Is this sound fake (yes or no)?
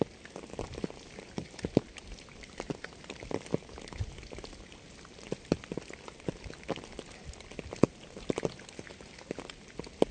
no